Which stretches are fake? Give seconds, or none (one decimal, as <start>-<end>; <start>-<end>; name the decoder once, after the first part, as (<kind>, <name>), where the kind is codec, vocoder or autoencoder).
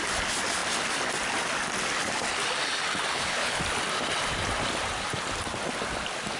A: 3.1-3.6 (codec, HILCodec)